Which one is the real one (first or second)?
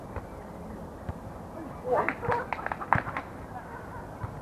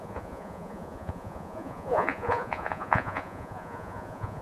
first